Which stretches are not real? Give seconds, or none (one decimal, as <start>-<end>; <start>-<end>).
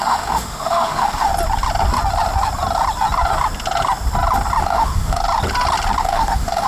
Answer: 0.0-1.3; 4.6-5.2; 6.0-6.7